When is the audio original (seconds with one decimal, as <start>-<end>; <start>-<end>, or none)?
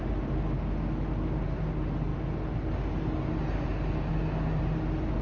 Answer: 0.0-5.2